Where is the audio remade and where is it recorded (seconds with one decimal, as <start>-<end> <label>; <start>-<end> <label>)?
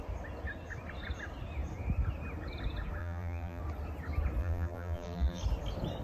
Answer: 0.0-3.0 recorded; 3.0-3.6 remade; 3.6-4.4 recorded; 4.4-5.4 remade; 5.4-6.0 recorded